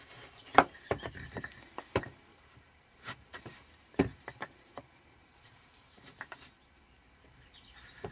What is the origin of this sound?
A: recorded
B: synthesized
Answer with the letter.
B